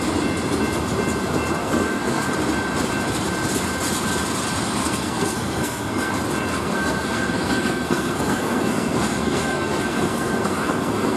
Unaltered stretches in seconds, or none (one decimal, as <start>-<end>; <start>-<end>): 0.0-1.6; 2.3-4.8; 6.1-6.5